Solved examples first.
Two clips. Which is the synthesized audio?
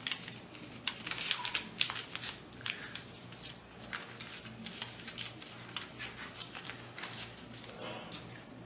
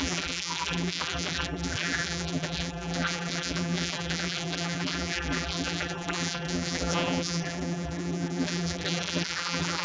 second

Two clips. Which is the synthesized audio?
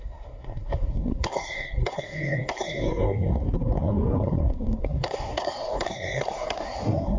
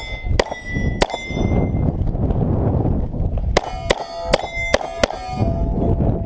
first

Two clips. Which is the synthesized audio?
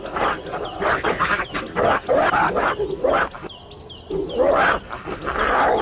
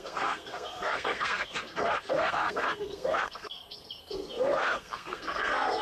second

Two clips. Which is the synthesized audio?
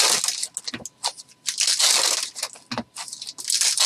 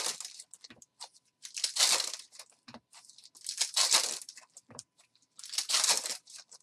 second